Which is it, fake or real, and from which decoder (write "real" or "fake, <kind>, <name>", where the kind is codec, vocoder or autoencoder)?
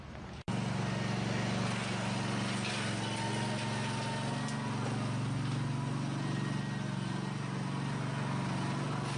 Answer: real